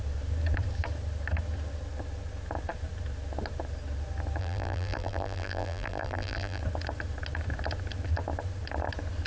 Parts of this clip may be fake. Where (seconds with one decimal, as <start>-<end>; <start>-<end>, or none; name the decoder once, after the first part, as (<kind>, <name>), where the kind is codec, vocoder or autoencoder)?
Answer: 4.4-6.6 (vocoder, BigVGAN v2)